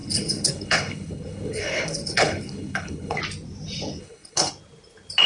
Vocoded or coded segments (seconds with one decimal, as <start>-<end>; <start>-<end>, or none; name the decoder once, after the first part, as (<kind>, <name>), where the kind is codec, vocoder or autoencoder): 0.0-3.2 (codec, HILCodec); 4.0-4.5

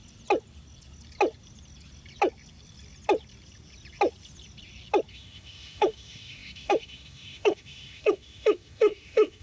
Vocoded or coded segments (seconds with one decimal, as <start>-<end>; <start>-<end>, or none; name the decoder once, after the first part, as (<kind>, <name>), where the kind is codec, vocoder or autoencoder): 5.1-9.4 (autoencoder, DAC-VAE)

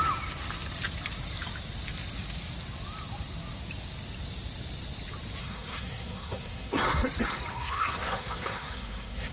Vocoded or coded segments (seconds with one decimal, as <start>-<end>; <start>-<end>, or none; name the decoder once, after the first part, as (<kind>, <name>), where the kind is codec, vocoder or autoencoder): 5.4-6.8 (codec, SNAC); 7.5-9.3